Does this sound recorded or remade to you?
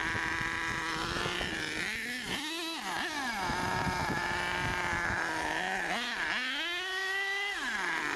recorded